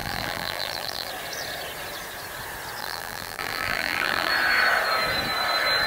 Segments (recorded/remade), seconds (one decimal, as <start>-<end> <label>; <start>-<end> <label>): 0.0-1.1 remade; 1.1-2.8 recorded; 2.8-4.3 remade; 4.3-5.9 recorded